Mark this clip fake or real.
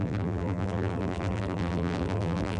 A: fake